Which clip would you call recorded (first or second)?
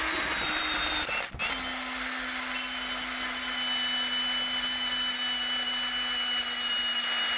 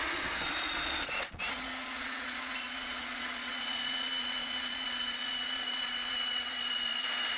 first